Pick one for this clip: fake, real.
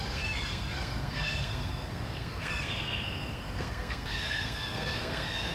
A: fake